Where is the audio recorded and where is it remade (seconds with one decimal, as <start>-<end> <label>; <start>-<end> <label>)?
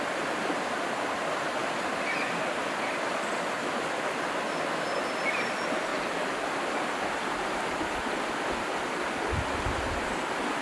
0.0-5.9 recorded; 5.9-8.9 remade; 8.9-10.6 recorded